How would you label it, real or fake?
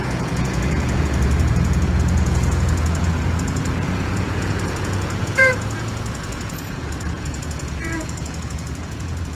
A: fake